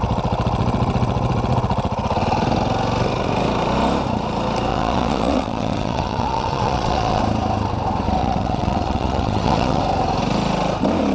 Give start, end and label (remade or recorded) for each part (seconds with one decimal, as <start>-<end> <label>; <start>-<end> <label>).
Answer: 0.0-4.7 recorded; 4.7-7.2 remade; 7.2-8.2 recorded; 8.2-9.8 remade; 9.8-11.1 recorded